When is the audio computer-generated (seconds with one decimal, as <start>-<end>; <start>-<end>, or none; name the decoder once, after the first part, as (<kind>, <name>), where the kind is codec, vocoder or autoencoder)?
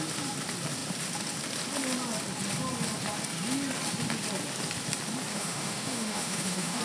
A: 5.3-6.8 (autoencoder, DAC-VAE)